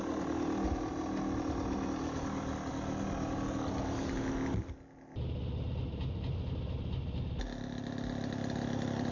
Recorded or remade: recorded